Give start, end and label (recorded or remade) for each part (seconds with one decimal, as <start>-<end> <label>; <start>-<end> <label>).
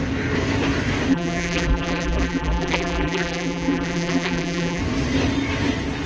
0.0-1.1 recorded; 1.1-4.8 remade; 4.8-6.1 recorded